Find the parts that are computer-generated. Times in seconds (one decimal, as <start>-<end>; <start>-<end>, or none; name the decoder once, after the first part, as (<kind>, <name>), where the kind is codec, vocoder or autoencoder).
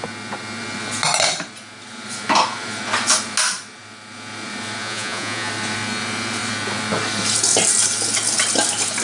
4.8-5.5 (vocoder, Vocos)